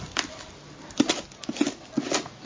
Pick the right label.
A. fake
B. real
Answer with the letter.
B